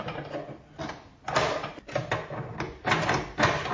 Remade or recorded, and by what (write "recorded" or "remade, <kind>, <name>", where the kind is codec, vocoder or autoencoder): recorded